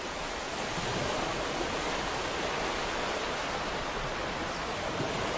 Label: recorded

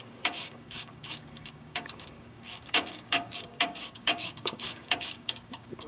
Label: remade